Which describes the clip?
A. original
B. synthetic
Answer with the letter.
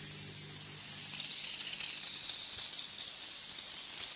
A